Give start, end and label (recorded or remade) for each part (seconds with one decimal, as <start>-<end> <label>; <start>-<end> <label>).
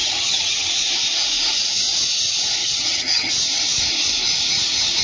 0.0-0.7 remade; 0.7-2.6 recorded; 2.6-3.3 remade; 3.3-5.0 recorded